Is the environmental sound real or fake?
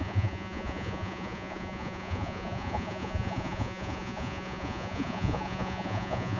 fake